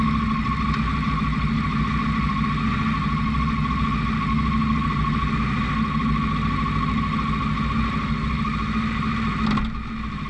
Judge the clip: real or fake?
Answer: real